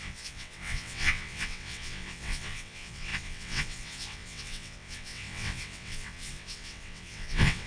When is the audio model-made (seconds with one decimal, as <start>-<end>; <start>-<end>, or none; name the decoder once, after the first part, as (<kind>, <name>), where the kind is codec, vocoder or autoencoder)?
0.0-7.7 (vocoder, WaveNeXt)